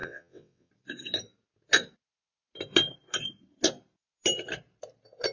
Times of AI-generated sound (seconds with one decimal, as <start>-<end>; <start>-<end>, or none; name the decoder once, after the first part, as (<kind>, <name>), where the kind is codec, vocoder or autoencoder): 0.0-0.7 (vocoder, WaveNeXt)